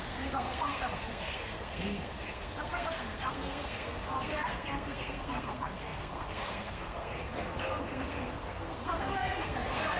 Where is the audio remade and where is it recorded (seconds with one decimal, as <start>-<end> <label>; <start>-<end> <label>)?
0.0-10.0 remade